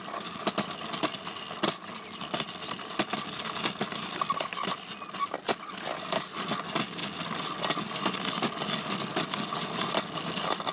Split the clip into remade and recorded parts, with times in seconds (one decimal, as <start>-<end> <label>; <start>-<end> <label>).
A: 0.0-10.7 recorded